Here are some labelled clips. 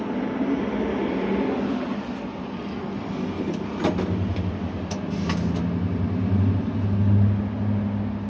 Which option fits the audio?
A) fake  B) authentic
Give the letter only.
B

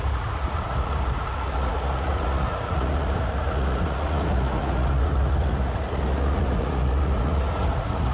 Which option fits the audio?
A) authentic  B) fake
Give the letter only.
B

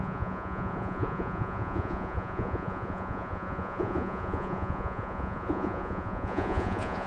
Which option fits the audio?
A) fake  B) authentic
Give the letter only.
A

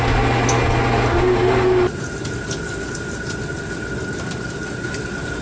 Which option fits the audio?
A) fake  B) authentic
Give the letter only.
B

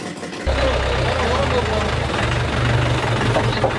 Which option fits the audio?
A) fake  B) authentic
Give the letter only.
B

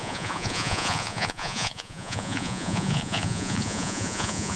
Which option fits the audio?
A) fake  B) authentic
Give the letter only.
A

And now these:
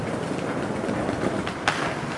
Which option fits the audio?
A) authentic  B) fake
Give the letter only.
A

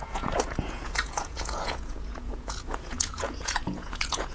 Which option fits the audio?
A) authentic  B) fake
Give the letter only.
B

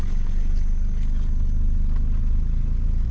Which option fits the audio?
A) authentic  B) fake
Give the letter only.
A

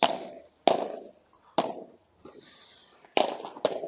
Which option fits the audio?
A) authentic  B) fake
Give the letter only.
A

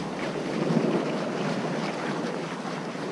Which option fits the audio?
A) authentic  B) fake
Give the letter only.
A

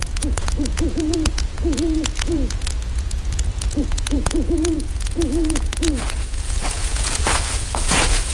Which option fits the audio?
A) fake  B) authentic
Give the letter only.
A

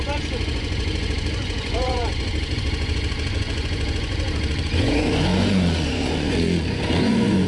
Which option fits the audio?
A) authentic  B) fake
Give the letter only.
B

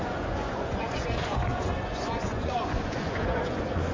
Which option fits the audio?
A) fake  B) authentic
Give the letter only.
A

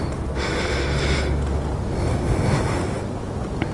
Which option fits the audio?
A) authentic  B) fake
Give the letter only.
A